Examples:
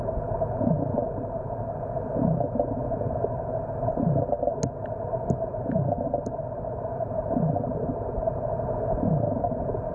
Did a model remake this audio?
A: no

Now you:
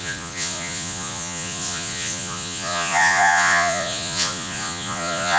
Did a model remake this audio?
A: yes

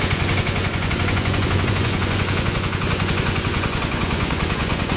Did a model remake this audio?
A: yes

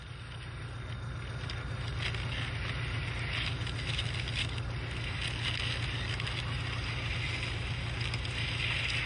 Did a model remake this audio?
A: no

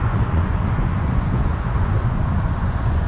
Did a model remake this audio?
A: yes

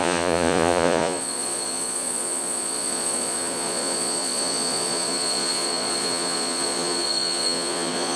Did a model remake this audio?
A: yes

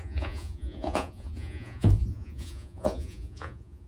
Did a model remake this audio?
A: yes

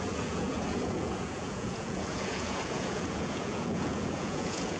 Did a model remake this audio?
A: yes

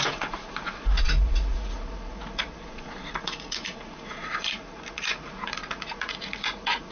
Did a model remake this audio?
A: yes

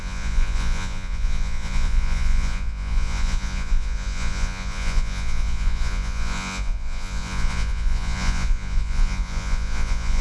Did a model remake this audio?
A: yes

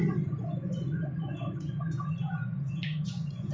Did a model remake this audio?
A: yes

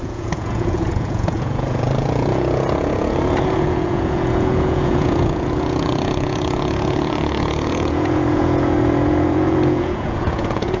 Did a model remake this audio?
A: yes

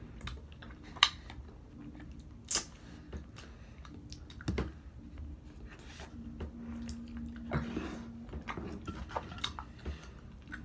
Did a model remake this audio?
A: no